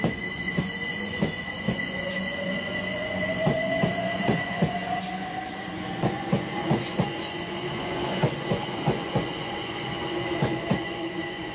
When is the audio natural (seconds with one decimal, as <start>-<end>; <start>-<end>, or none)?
none